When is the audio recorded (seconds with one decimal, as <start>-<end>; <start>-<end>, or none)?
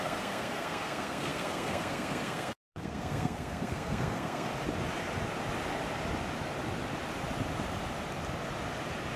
4.5-9.2